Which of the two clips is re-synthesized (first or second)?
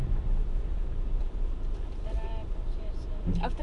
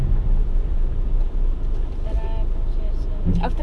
first